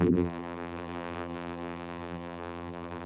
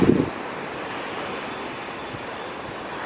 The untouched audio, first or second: second